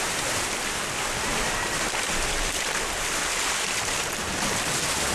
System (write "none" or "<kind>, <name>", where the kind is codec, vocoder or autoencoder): none